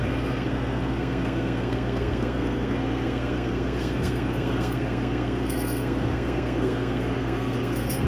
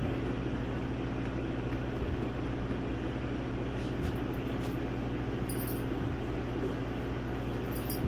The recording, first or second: second